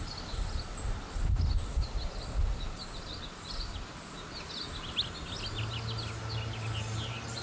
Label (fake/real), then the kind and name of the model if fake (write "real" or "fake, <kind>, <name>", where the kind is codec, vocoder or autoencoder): real